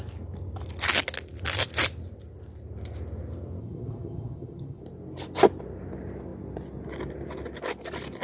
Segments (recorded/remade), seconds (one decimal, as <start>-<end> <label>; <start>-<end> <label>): 0.0-3.6 recorded; 3.6-4.8 remade; 4.8-8.2 recorded